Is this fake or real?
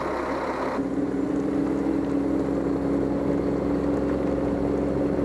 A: real